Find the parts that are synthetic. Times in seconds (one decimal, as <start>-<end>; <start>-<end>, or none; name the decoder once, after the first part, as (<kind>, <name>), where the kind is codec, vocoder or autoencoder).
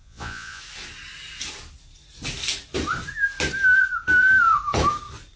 0.0-0.6 (vocoder, Vocos)